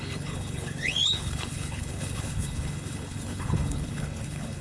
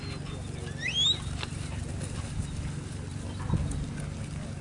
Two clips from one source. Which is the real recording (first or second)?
second